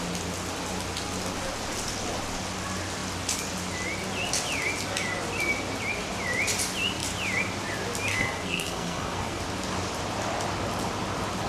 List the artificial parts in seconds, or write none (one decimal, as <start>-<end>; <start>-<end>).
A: 8.1-9.4